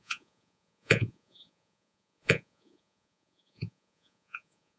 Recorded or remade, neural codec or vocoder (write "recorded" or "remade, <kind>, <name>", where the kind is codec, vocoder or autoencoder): remade, vocoder, Vocos